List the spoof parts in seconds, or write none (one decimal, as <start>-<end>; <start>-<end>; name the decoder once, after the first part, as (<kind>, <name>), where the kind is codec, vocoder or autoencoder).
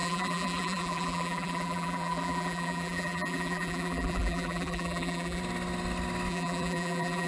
0.0-5.4 (vocoder, BigVGAN v2); 6.3-7.3